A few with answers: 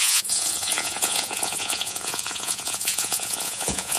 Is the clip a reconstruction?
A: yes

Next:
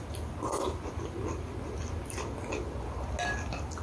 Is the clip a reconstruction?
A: no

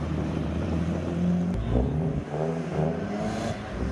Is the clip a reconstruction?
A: yes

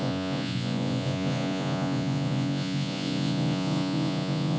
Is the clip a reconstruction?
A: yes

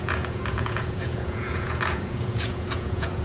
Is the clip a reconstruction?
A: yes